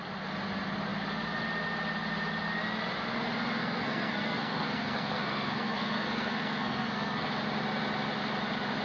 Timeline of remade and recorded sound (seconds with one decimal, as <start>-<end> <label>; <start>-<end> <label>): 0.0-3.6 recorded; 3.6-7.3 remade; 7.3-8.8 recorded